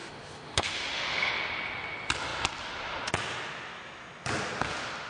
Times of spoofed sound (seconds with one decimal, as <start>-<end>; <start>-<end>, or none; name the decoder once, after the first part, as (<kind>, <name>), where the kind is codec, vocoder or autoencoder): 0.0-1.3 (autoencoder, DAC-VAE)